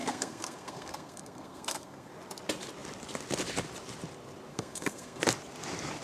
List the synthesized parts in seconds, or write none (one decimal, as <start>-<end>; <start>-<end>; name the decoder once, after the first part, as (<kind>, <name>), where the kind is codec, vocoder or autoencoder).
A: 0.0-2.1 (codec, SNAC); 4.5-5.2